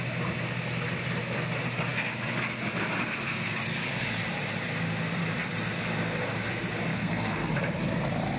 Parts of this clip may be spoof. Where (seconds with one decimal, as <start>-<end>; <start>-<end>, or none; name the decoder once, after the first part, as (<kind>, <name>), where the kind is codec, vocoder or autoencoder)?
6.9-7.5 (codec, SNAC)

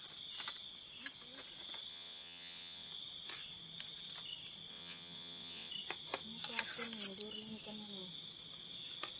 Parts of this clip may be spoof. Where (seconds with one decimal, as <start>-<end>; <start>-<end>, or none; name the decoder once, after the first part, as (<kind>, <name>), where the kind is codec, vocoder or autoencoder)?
1.9-2.9 (vocoder, WaveNeXt); 4.7-5.7

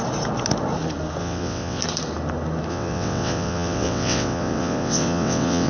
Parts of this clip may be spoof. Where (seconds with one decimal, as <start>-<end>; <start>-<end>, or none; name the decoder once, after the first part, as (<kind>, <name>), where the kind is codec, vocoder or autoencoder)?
1.2-1.8 (vocoder, WaveNeXt); 2.7-5.7

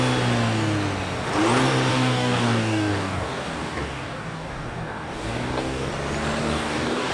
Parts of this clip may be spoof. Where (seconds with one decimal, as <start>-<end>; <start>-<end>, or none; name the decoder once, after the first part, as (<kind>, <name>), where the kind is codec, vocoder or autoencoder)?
1.9-5.9 (codec, DAC); 6.4-7.1

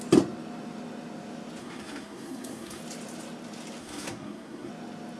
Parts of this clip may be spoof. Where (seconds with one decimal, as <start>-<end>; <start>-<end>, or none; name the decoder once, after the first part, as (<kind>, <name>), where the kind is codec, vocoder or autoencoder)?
1.6-2.8 (codec, SNAC); 3.8-4.7

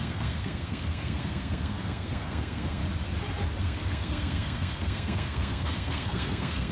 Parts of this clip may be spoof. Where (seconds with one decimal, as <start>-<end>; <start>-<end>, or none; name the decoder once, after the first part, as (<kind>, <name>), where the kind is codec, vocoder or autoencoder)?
0.0-2.8 (codec, SNAC); 3.6-6.7

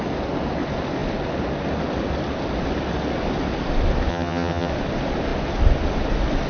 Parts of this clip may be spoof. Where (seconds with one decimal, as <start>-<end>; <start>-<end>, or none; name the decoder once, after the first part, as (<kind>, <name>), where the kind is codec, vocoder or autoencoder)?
4.1-4.7 (vocoder, HiFi-GAN)